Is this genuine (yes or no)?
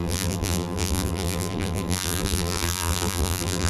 no